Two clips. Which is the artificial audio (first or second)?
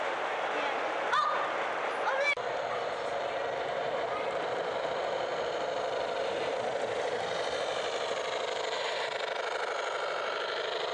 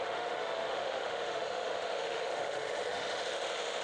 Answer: second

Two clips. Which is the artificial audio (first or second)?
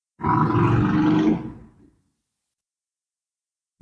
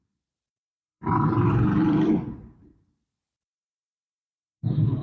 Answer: second